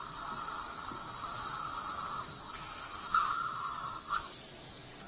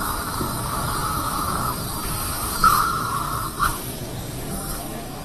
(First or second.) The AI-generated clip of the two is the second